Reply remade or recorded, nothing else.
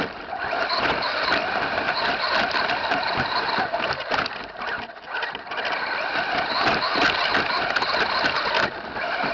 recorded